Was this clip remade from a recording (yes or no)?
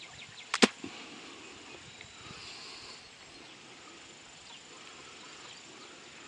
no